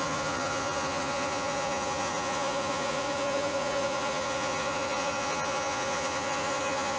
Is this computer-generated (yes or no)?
yes